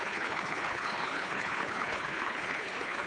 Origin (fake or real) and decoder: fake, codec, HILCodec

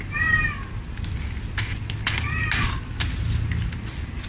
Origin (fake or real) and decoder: real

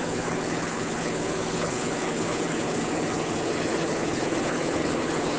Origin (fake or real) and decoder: fake, codec, HILCodec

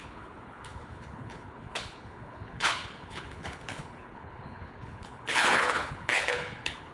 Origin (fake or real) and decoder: fake, codec, HILCodec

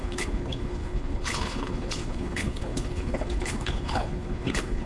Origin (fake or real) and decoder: fake, codec, HILCodec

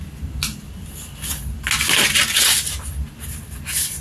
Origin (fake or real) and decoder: real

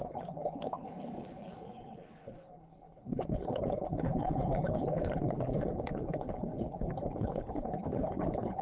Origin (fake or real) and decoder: fake, codec, HILCodec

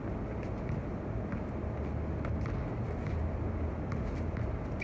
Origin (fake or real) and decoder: real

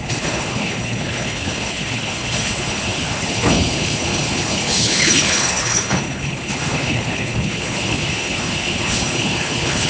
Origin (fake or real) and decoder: fake, codec, HILCodec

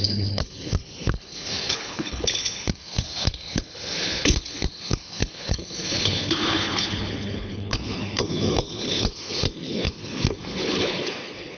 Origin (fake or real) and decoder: fake, codec, HILCodec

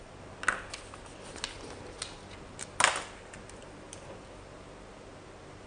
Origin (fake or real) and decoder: real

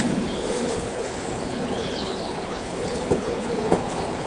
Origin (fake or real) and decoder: fake, codec, HILCodec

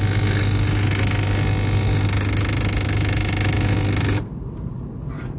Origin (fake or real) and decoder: real